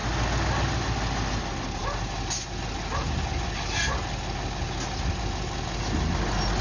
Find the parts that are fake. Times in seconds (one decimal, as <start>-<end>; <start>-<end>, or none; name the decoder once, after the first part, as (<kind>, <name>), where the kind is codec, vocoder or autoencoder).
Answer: none